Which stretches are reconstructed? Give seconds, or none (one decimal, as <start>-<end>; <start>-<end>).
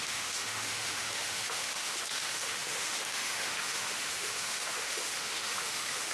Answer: 0.0-6.1